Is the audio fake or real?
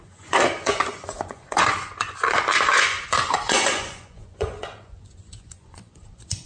fake